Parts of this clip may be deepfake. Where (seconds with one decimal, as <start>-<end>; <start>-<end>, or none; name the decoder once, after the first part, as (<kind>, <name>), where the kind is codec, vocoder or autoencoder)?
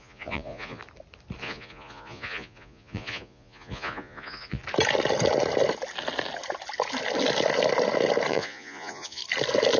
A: 0.0-0.8 (vocoder, Vocos); 1.4-4.6; 8.3-9.2